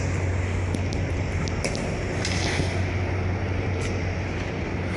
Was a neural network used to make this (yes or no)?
no